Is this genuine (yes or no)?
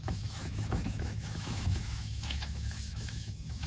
no